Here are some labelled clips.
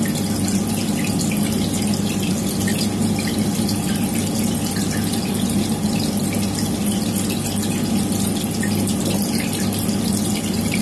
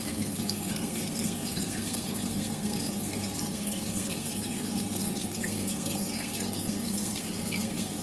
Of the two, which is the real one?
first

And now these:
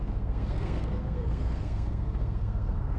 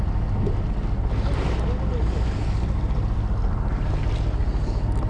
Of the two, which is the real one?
second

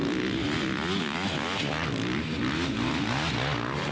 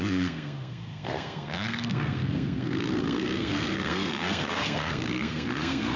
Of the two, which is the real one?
first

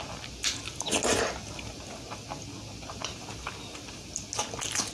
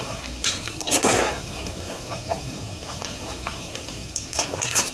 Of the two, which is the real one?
first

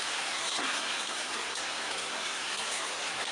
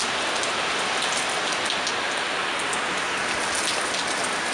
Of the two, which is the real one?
second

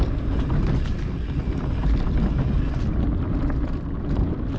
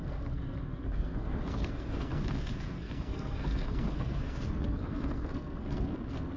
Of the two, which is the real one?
first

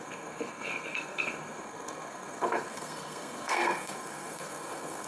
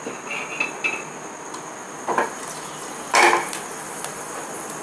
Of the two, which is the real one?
second